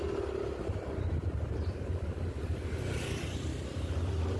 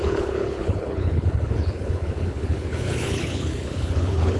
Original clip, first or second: first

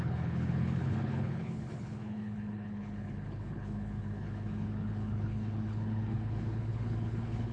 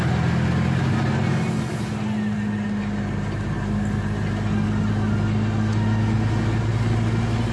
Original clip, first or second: second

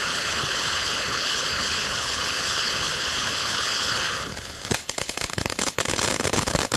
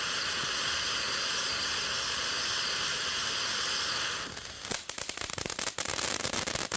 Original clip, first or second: second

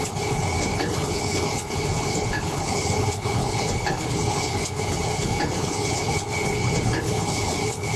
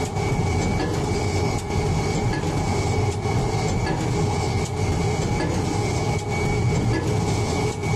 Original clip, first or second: second